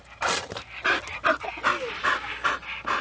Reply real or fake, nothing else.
real